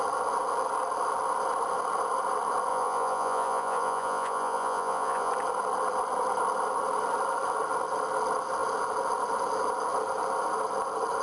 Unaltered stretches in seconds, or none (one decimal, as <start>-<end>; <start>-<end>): 0.0-2.7; 5.3-11.2